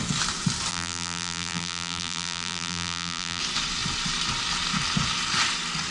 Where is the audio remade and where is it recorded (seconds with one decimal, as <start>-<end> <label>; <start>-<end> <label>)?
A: 0.0-0.7 recorded; 0.7-3.4 remade; 3.4-5.9 recorded